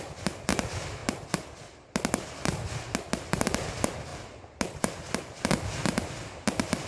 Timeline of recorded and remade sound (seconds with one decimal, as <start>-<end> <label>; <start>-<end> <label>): 0.0-6.9 recorded